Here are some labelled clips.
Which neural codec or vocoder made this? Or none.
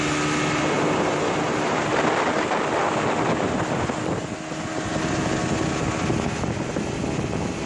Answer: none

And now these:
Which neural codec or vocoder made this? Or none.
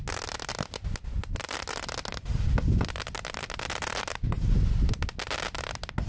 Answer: none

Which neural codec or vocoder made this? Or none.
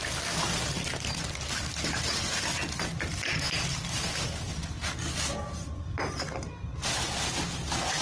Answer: none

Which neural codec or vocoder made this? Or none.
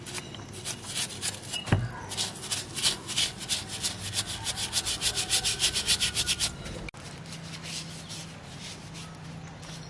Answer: none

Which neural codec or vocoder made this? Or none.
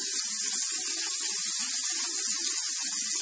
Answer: none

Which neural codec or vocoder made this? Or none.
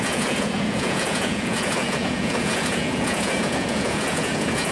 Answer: vocoder, Vocos